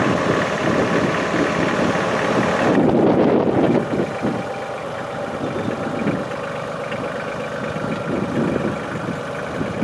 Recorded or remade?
recorded